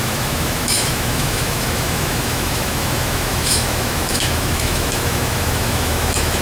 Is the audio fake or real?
fake